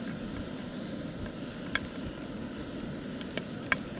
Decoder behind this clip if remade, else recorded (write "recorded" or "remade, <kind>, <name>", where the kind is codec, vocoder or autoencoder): recorded